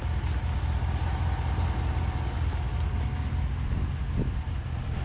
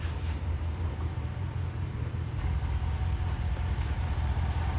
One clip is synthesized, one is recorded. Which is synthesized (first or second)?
second